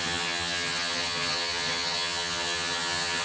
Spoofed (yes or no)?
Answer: yes